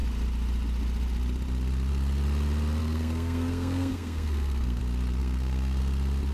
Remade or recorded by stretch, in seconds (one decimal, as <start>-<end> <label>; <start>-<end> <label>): 0.0-2.8 recorded; 2.8-4.8 remade; 4.8-5.2 recorded; 5.2-5.8 remade; 5.8-6.3 recorded